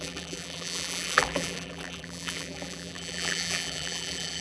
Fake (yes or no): yes